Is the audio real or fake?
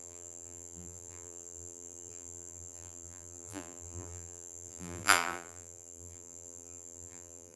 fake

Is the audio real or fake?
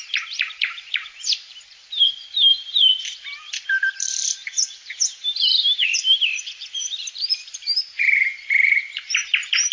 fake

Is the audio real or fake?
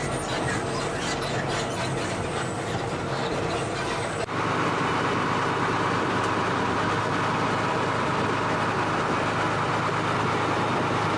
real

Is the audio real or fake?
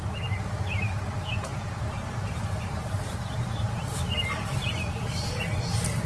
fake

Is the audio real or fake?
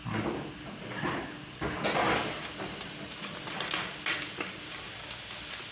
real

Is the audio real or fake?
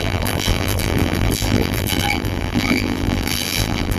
fake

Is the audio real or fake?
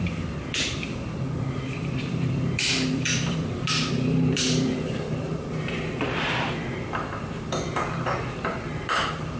fake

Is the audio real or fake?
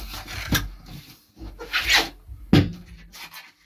real